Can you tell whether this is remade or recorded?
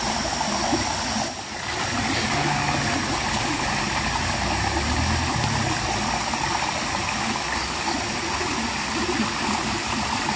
recorded